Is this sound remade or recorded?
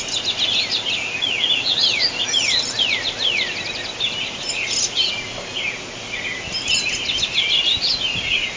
recorded